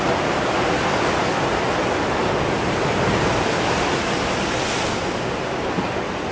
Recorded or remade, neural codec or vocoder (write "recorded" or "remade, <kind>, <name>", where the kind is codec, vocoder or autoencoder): recorded